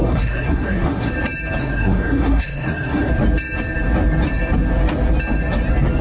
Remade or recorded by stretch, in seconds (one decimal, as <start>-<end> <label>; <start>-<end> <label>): 0.0-1.1 remade; 1.1-1.6 recorded; 1.6-3.1 remade; 3.1-6.0 recorded